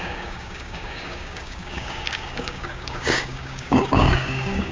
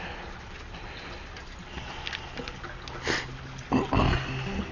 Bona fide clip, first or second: second